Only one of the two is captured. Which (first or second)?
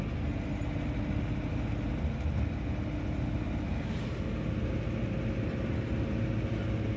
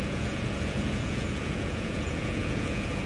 first